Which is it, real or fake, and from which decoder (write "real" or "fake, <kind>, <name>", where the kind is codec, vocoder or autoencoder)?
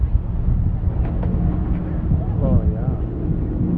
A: real